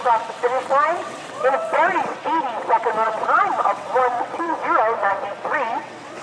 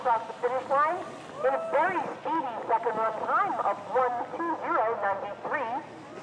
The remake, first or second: first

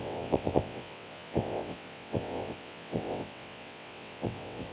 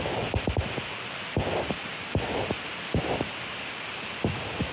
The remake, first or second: first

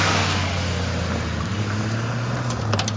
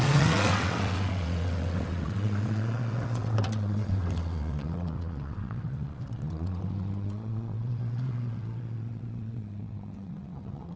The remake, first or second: second